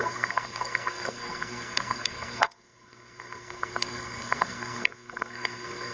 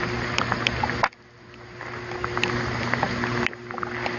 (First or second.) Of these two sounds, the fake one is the first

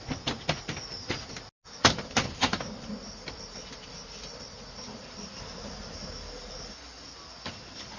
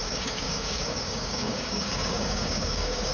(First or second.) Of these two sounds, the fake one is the second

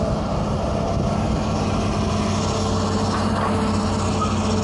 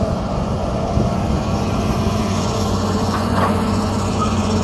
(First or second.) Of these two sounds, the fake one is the second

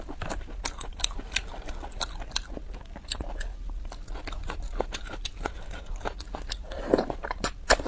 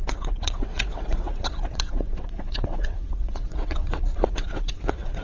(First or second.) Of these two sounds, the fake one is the second